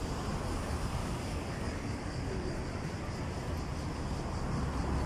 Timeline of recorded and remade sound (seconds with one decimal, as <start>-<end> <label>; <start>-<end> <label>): 0.0-1.0 recorded; 1.0-2.6 remade; 2.6-5.1 recorded